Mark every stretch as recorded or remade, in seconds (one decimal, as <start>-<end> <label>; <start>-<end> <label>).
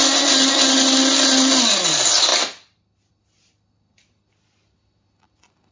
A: 0.0-5.7 recorded